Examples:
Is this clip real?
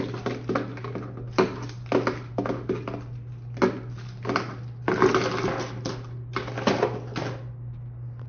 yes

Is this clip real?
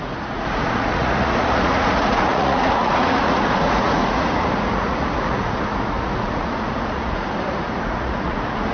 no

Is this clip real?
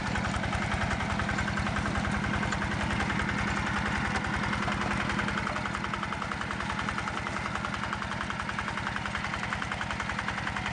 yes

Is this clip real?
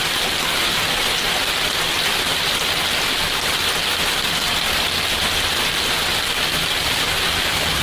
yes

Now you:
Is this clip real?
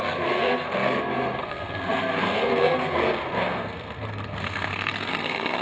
no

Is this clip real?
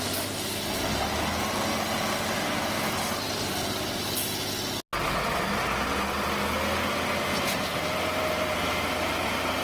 yes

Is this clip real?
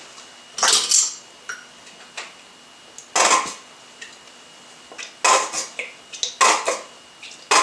yes